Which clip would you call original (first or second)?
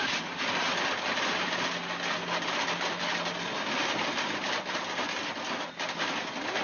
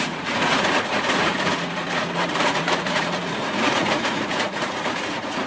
first